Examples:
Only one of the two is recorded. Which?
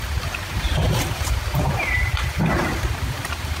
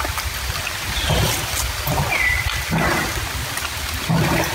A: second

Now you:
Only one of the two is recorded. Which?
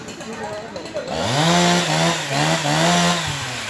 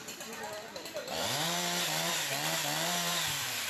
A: first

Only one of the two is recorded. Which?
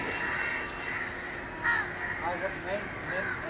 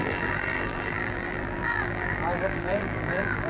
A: first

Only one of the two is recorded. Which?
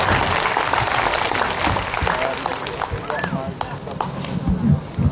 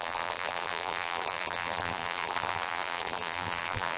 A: first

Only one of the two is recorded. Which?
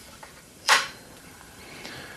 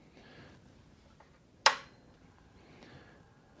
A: second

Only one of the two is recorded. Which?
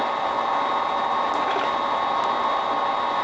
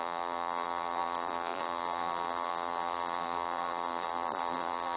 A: first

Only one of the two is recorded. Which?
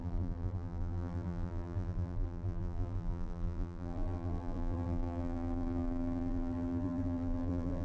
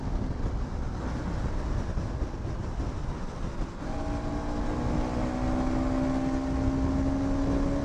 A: second